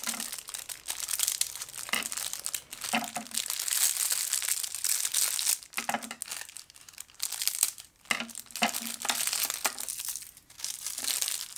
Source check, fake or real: real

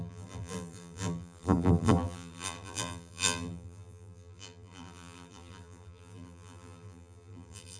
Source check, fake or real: fake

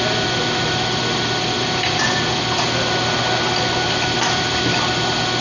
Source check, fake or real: real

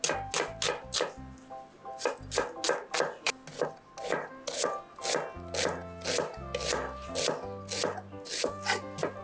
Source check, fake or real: real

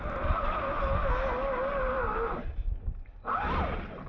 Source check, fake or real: real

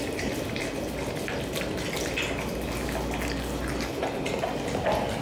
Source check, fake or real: real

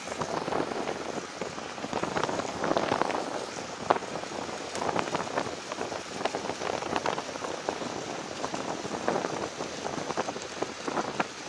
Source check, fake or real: real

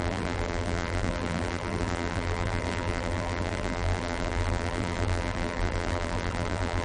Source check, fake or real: fake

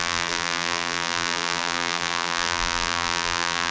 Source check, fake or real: fake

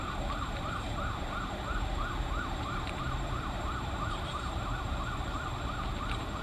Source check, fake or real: fake